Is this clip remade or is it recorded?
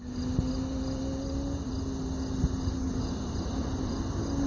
recorded